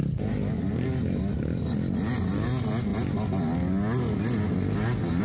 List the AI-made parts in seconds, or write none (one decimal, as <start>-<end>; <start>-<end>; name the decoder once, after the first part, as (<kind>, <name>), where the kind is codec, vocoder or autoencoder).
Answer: none